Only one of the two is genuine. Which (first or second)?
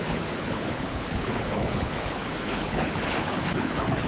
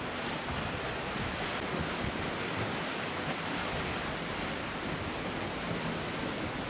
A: second